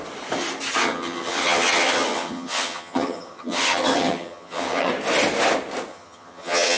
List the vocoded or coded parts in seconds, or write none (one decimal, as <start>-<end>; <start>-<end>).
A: 0.8-4.9; 5.9-6.8